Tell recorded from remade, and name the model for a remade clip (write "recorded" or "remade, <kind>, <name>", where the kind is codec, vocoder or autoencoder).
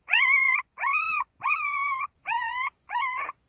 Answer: remade, vocoder, Vocos